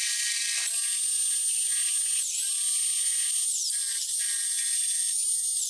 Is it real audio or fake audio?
real